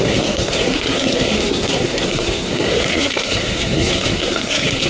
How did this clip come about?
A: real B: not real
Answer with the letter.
B